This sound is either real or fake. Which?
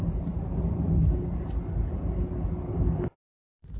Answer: real